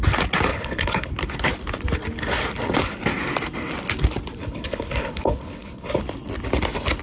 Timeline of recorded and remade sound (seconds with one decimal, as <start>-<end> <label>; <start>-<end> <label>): 0.0-0.5 recorded; 0.5-1.1 remade; 1.1-4.4 recorded; 4.4-6.0 remade; 6.0-7.0 recorded